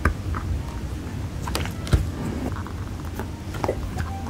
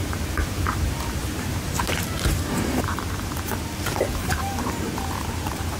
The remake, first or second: second